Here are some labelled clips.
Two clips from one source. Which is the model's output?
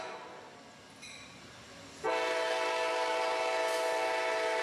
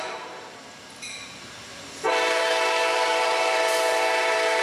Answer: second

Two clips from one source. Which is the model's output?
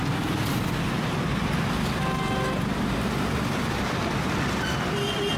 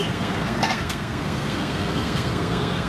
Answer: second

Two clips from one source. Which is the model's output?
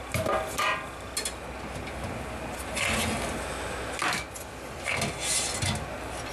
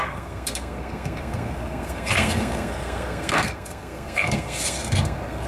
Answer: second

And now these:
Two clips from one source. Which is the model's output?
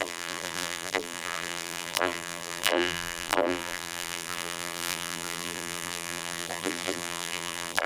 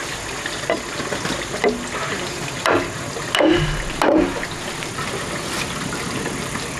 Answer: first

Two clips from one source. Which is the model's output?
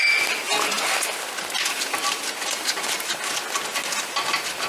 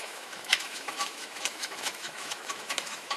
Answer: second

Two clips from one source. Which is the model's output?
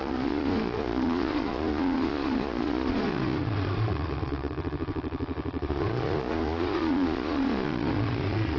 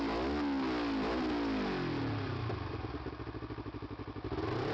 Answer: first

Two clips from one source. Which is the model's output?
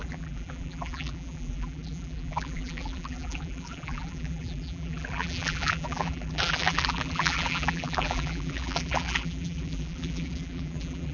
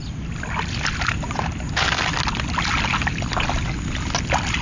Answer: first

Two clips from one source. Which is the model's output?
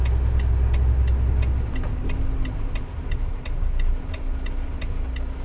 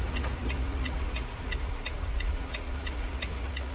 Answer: second